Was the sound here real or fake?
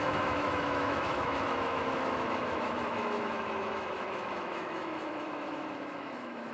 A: fake